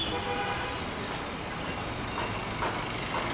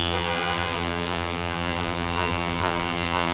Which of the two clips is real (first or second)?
first